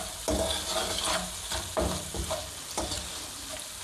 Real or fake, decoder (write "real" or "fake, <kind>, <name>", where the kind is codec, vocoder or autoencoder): real